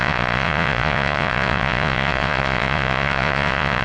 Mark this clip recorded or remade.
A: remade